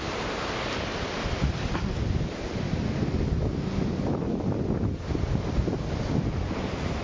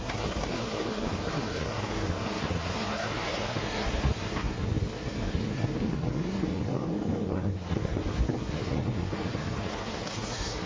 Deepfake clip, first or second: second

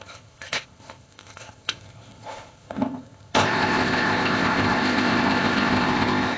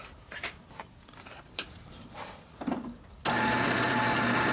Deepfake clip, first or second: first